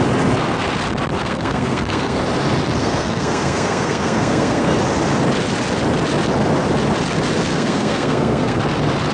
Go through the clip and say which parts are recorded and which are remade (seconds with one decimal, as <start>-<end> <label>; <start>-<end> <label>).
0.0-1.2 recorded; 1.2-2.2 remade; 2.2-2.8 recorded; 2.8-4.8 remade; 4.8-7.5 recorded; 7.5-8.6 remade; 8.6-9.1 recorded